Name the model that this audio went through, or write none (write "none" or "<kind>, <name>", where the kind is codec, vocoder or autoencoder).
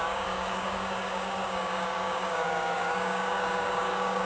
codec, DAC